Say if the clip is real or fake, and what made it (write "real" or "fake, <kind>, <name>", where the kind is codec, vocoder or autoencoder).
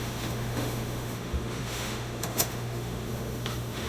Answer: fake, autoencoder, DAC-VAE